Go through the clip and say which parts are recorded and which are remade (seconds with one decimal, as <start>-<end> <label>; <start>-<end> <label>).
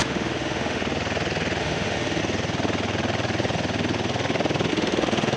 0.0-0.8 remade; 0.8-1.6 recorded; 1.6-2.2 remade; 2.2-4.7 recorded; 4.7-5.4 remade